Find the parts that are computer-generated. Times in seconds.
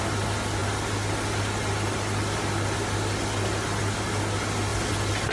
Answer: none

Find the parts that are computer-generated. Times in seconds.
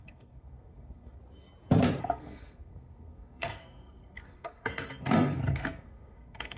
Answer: 0.0-1.2 (codec, SNAC); 2.0-6.6